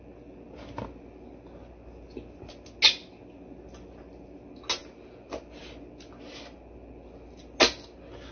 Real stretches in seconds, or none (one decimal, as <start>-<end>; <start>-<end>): 0.0-8.3